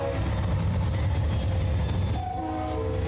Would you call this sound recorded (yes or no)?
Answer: yes